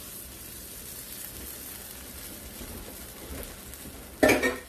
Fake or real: real